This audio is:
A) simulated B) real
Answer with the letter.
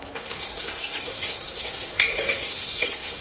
A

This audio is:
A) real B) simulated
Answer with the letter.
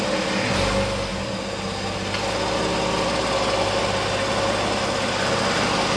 A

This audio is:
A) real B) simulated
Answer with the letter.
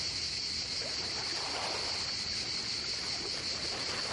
A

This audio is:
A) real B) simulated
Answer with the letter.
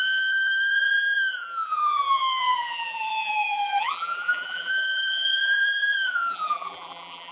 B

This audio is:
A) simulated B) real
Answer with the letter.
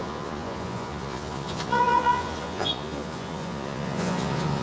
A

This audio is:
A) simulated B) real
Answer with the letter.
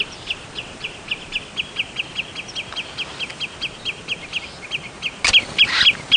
B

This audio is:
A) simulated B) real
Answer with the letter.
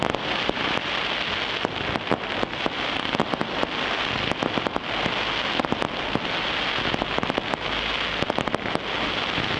B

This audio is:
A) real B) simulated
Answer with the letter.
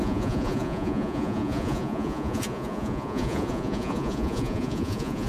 B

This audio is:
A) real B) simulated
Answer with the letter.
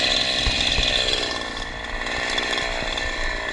A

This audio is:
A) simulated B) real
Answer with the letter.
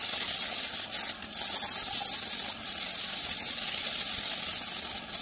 B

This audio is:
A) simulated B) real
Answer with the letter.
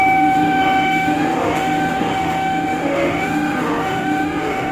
A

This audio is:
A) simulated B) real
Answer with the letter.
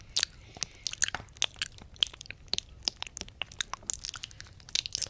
B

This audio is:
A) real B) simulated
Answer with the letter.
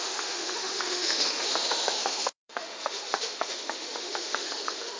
B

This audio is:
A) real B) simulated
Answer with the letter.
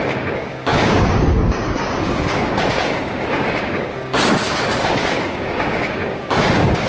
B